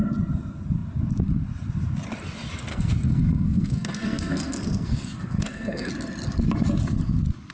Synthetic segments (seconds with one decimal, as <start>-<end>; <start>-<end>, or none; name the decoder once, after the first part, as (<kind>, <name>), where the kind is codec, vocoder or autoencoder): 2.7-5.9 (codec, SNAC)